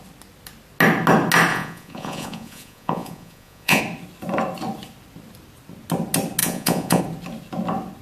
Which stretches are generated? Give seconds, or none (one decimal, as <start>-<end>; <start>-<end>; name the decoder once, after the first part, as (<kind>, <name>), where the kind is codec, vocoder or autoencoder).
1.5-3.8 (vocoder, Vocos); 6.4-7.0